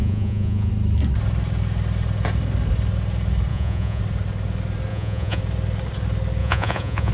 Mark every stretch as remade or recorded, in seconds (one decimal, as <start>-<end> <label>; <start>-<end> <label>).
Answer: 0.0-0.7 remade; 0.7-3.5 recorded; 3.5-4.0 remade; 4.0-4.9 recorded; 4.9-5.4 remade; 5.4-6.4 recorded; 6.4-7.1 remade